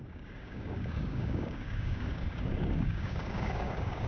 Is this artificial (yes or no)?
yes